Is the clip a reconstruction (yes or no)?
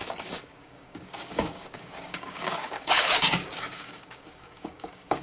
yes